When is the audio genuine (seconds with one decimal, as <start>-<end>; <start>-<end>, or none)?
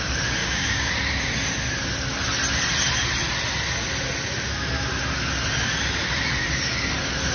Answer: 0.0-0.4; 0.9-7.3